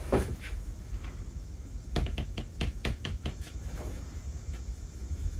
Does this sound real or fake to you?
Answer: fake